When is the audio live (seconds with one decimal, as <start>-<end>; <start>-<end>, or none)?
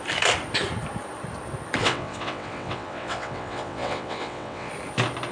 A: 0.0-1.8; 4.7-5.3